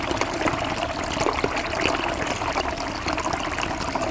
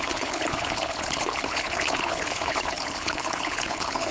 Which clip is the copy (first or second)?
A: second